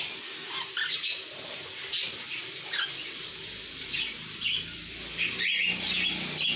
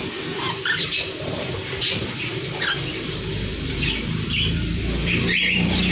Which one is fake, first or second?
second